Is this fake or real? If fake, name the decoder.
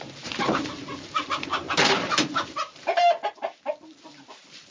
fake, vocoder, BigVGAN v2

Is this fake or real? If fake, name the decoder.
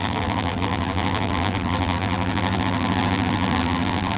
fake, vocoder, BigVGAN v2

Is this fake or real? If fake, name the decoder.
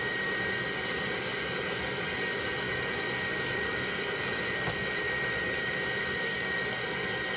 real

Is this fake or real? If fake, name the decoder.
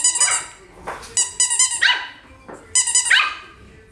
real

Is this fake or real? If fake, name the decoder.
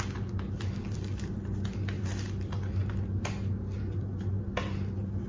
real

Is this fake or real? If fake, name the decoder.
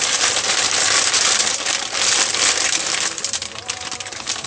fake, vocoder, BigVGAN v2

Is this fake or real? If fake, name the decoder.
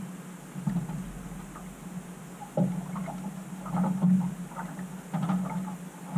real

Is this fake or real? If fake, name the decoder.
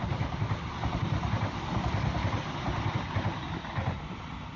fake, vocoder, BigVGAN v2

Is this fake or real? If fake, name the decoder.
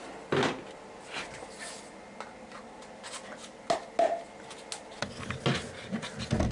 real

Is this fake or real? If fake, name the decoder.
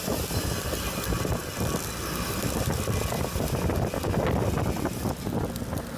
real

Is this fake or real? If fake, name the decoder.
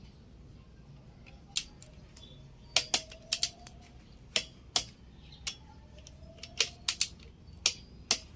real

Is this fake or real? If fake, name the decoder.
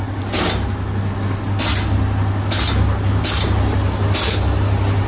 real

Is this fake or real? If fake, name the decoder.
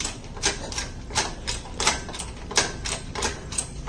fake, vocoder, BigVGAN v2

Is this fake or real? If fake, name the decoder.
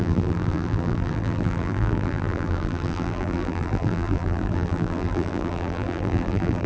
fake, vocoder, BigVGAN v2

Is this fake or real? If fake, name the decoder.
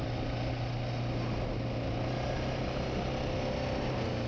real